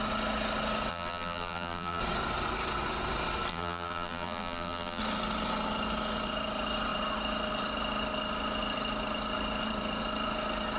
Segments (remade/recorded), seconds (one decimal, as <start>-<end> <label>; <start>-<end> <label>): 0.0-0.9 recorded; 0.9-2.0 remade; 2.0-3.5 recorded; 3.5-5.0 remade; 5.0-10.8 recorded